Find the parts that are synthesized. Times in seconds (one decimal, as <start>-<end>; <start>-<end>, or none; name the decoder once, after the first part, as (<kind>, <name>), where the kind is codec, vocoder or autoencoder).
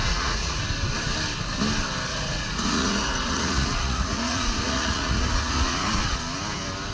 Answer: 0.0-0.6 (vocoder, Vocos); 2.1-6.2